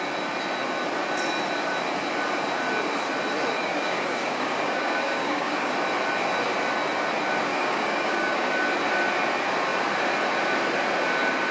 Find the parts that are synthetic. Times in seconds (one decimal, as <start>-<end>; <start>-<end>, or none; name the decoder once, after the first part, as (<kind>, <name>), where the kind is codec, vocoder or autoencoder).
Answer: 3.6-5.7 (codec, DAC); 7.5-8.5